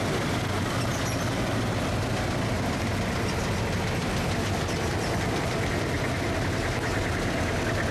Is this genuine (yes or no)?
yes